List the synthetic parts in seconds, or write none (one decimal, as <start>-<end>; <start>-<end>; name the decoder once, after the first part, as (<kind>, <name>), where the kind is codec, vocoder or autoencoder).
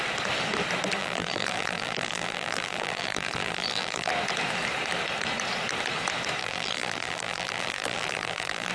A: 1.0-4.1 (vocoder, BigVGAN v2); 6.4-8.7